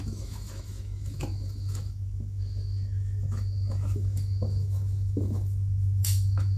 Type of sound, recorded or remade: remade